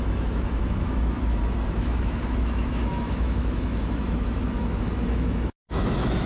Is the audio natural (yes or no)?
no